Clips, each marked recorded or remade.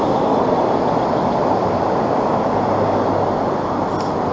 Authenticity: recorded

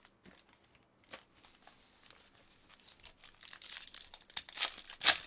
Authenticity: recorded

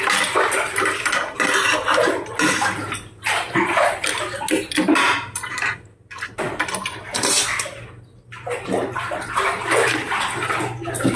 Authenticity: recorded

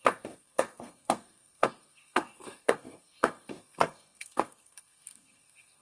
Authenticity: remade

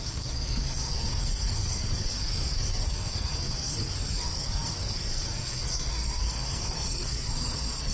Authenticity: remade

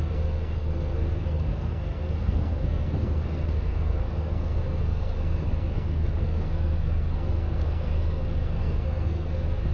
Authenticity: remade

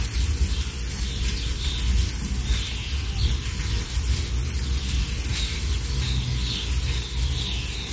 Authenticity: recorded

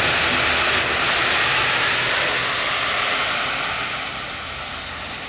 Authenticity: recorded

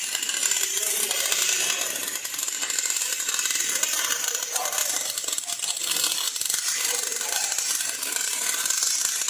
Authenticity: remade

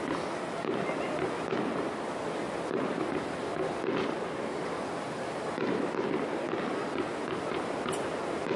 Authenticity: recorded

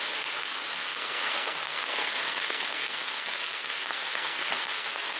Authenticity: remade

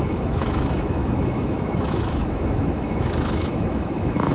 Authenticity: remade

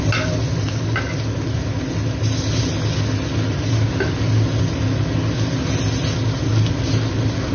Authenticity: recorded